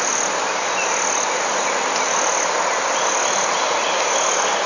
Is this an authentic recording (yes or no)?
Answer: yes